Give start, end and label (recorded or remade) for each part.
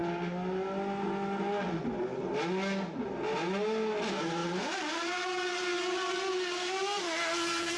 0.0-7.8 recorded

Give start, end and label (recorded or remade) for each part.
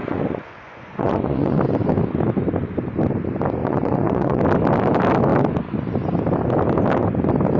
0.0-1.6 remade; 1.6-3.6 recorded; 3.6-4.4 remade; 4.4-7.6 recorded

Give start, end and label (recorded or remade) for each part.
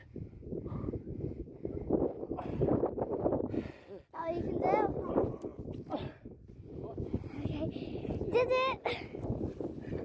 0.0-10.0 recorded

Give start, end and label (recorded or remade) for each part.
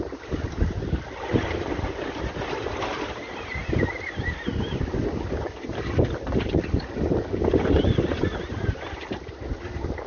0.0-10.1 recorded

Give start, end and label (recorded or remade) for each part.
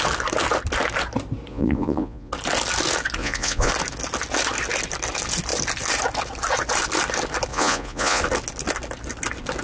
0.0-1.5 recorded; 1.5-2.3 remade; 2.3-3.2 recorded; 3.2-3.7 remade; 3.7-7.5 recorded; 7.5-8.2 remade; 8.2-9.6 recorded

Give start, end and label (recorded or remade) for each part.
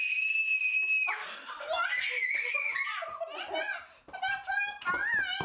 0.0-5.4 recorded